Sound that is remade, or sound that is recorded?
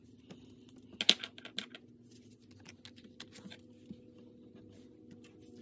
recorded